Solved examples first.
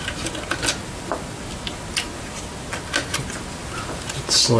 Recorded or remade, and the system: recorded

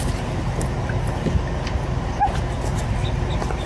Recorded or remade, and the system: recorded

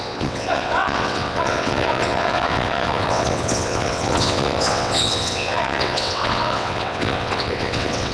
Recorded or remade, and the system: remade, vocoder, WaveNeXt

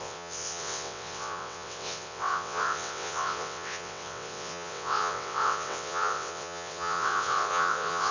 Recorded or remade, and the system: remade, vocoder, WaveNeXt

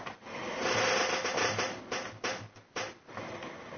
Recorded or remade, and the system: recorded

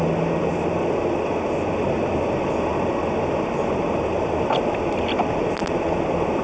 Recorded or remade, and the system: recorded